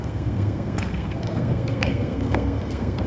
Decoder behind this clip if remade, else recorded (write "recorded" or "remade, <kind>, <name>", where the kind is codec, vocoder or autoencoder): remade, codec, SNAC